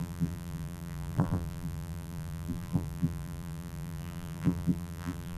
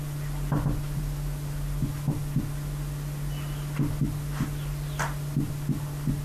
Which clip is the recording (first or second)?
second